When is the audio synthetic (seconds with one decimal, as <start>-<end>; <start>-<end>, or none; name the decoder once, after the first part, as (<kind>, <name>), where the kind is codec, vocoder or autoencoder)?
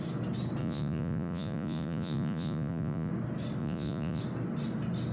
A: 0.6-3.1 (vocoder, Vocos); 3.6-4.2